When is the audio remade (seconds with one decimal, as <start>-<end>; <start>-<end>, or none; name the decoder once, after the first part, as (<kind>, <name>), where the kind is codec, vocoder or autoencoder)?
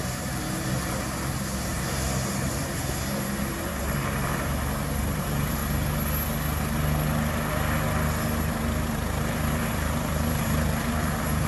0.0-5.6 (vocoder, BigVGAN v2); 8.5-11.5